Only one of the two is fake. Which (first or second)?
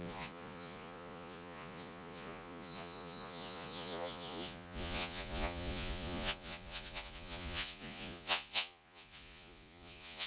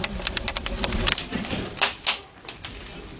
first